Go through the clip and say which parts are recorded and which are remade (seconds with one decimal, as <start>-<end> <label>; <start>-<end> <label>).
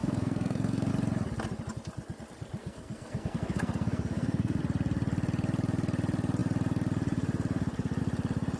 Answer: 0.0-0.9 remade; 0.9-2.6 recorded; 2.6-4.6 remade; 4.6-8.6 recorded